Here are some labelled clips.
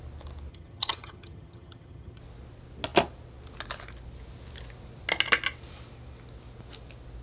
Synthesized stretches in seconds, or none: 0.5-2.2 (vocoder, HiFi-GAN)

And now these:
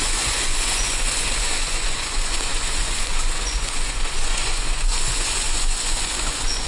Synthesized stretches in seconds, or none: 0.0-6.7 (vocoder, Vocos)

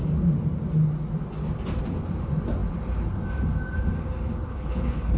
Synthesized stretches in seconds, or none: 4.5-5.2 (codec, HILCodec)

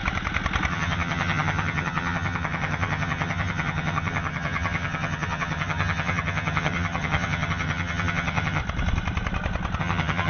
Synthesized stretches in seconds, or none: 0.7-8.6 (vocoder, HiFi-GAN); 9.8-10.3